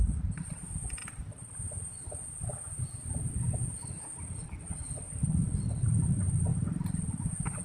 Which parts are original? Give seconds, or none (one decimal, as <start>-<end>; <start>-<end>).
none